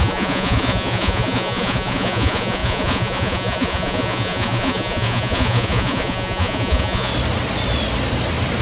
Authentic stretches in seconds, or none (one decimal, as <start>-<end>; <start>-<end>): 7.1-8.6